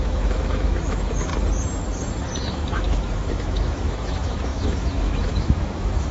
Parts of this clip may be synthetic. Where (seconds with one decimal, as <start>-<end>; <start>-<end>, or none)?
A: 0.0-1.3; 2.5-6.1